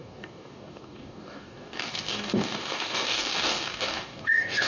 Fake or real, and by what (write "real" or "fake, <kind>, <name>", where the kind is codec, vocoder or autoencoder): fake, codec, DAC